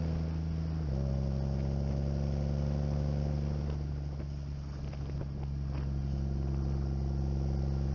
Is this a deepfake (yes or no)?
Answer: no